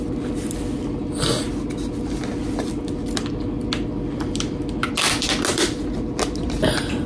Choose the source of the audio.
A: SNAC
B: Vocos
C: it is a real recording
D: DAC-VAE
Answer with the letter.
C